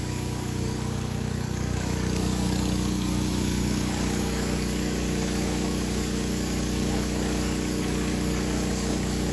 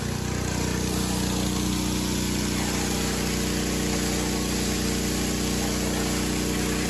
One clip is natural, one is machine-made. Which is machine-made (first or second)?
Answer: first